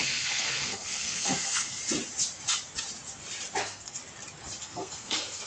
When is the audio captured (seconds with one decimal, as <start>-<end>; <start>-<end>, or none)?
1.8-3.6; 4.0-4.6

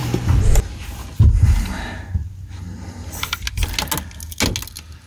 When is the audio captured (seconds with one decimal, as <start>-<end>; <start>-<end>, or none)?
0.0-5.1

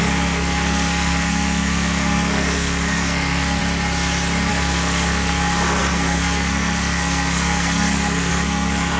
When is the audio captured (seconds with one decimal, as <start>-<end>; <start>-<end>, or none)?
3.6-4.5

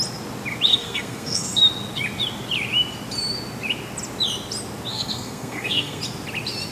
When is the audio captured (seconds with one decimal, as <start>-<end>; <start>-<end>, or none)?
0.0-0.7; 1.6-4.9; 6.0-6.7